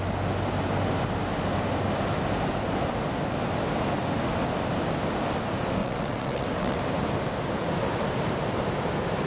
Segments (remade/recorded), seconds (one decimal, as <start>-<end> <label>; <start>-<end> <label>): 0.0-5.8 recorded; 5.8-6.8 remade; 6.8-9.3 recorded